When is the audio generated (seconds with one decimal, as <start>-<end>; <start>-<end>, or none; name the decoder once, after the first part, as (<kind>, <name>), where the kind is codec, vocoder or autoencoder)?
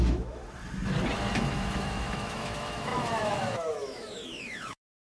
0.0-0.4 (autoencoder, DAC-VAE); 1.5-5.0